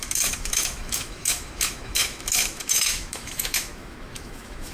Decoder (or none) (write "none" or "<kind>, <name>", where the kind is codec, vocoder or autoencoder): autoencoder, DAC-VAE